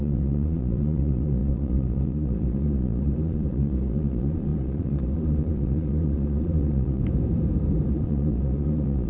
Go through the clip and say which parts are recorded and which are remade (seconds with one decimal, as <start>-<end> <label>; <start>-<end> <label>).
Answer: 0.0-7.0 remade; 7.0-7.9 recorded; 7.9-9.1 remade

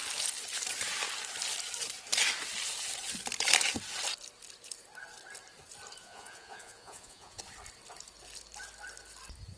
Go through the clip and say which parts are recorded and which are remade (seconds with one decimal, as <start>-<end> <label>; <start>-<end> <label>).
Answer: 0.0-6.0 recorded; 6.0-7.4 remade; 7.4-9.6 recorded

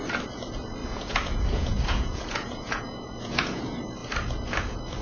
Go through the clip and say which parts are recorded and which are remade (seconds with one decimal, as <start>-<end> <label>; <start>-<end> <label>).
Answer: 0.0-0.8 recorded; 0.8-3.6 remade; 3.6-5.0 recorded

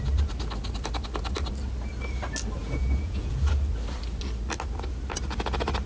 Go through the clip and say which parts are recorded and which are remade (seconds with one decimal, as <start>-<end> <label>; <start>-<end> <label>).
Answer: 0.0-2.6 recorded; 2.6-3.5 remade; 3.5-5.9 recorded

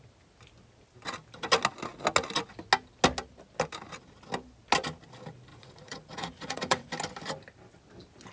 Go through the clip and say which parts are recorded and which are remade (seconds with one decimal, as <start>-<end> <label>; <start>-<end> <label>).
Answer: 0.0-5.5 recorded; 5.5-6.9 remade; 6.9-8.3 recorded

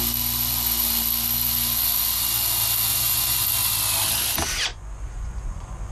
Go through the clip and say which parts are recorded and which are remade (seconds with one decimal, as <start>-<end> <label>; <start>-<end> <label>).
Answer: 0.0-2.9 recorded; 2.9-3.5 remade; 3.5-4.7 recorded; 4.7-5.9 remade

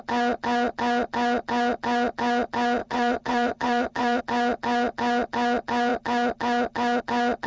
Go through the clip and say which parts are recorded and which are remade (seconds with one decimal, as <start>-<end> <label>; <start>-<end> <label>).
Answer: 0.0-2.8 recorded; 2.8-4.2 remade; 4.2-7.5 recorded

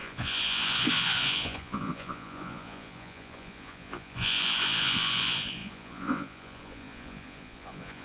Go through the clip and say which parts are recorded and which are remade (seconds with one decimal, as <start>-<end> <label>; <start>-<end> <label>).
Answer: 0.0-8.0 remade